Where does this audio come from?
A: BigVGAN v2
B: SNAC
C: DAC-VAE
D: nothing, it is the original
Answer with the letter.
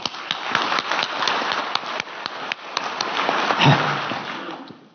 D